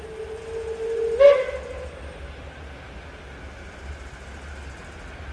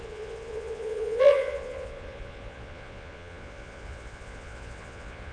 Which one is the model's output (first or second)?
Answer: second